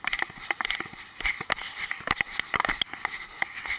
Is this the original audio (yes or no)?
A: yes